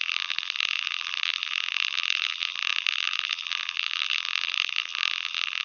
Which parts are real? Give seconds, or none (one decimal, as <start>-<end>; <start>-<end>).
none